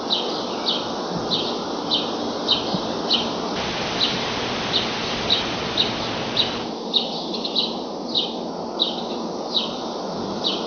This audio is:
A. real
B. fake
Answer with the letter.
A